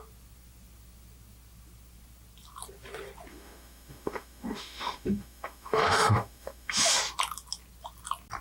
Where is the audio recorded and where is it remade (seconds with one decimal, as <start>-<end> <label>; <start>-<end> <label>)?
0.0-3.3 recorded; 3.3-7.0 remade; 7.0-8.4 recorded